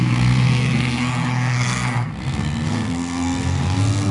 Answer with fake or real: fake